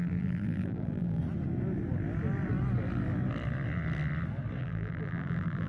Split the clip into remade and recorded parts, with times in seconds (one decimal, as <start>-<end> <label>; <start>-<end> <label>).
0.0-1.2 remade; 1.2-4.6 recorded; 4.6-5.7 remade